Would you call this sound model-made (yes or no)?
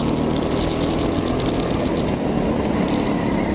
no